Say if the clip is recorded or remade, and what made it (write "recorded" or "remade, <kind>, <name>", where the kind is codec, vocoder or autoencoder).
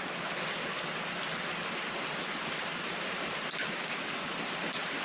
recorded